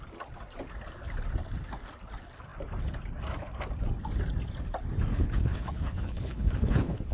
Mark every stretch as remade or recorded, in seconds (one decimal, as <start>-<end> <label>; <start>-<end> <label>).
0.0-5.1 recorded; 5.1-7.1 remade